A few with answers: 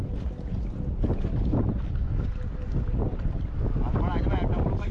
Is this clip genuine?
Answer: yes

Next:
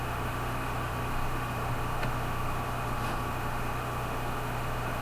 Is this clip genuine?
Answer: no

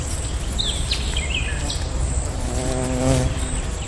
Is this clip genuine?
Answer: yes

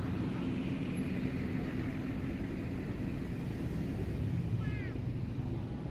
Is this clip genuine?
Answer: yes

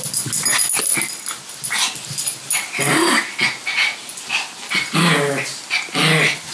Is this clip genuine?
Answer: yes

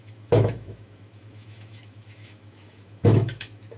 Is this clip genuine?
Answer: no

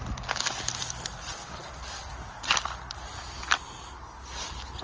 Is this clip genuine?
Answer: yes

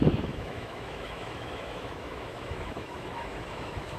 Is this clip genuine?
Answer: no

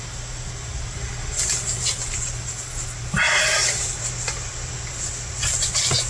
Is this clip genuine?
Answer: yes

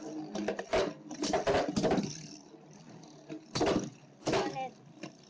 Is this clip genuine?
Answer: yes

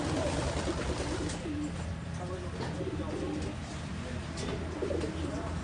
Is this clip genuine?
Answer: yes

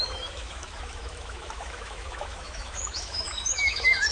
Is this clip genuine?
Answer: no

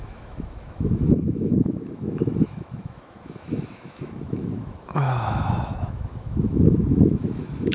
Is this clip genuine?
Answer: no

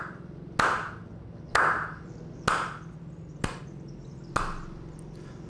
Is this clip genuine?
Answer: yes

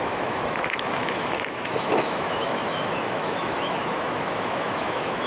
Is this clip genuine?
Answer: no